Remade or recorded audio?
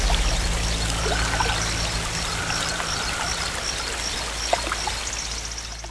recorded